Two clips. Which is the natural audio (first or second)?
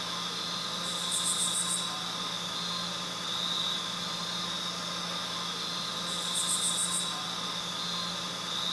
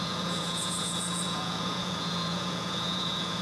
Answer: first